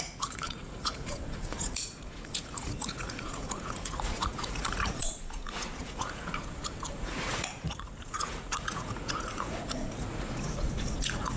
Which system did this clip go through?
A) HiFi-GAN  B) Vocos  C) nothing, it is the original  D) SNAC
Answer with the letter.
B